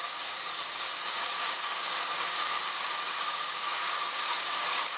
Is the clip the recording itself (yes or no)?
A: no